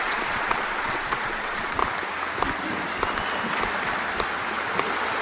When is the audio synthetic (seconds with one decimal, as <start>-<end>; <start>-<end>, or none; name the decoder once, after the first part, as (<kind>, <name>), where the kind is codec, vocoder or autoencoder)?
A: 0.0-1.8 (vocoder, Vocos)